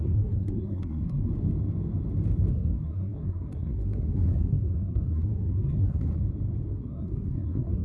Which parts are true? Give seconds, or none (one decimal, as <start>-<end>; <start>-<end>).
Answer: 1.3-2.5; 6.1-6.7